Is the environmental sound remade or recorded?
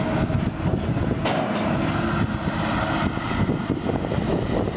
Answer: recorded